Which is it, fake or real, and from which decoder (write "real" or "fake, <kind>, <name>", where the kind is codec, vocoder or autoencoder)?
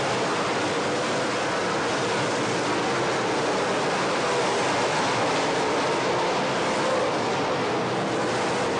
real